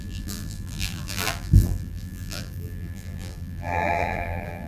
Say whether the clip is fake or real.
fake